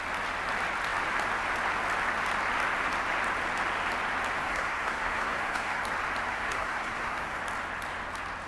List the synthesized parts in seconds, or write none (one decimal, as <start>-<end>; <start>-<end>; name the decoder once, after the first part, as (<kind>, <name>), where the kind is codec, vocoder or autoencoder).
4.4-5.8 (codec, SNAC); 6.3-7.4